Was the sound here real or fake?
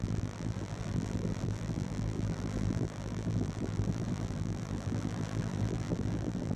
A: fake